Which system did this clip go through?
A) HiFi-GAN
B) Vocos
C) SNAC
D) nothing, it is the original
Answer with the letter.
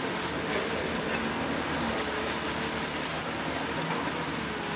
D